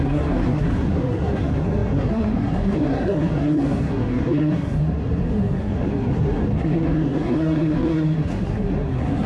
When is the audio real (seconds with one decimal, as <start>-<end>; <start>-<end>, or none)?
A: none